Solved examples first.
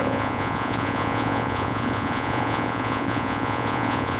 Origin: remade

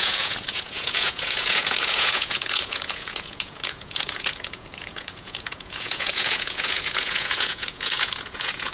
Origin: remade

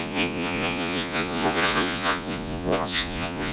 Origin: remade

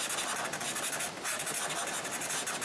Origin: recorded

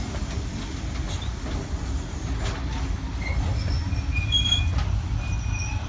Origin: recorded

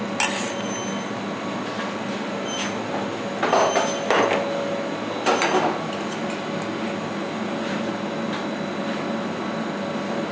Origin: recorded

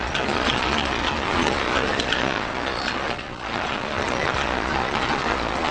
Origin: remade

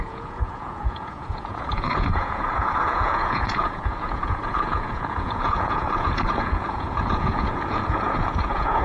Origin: remade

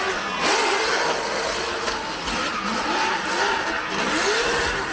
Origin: recorded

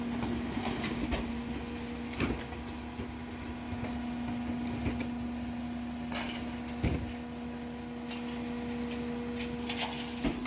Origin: recorded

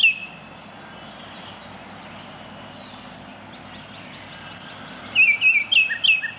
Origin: recorded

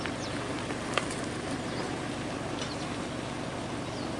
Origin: recorded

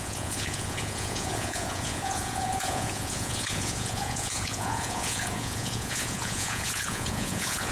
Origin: remade